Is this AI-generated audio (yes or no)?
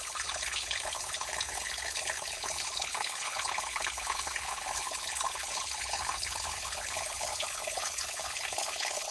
yes